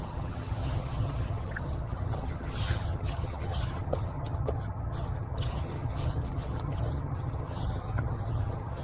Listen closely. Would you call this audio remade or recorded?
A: remade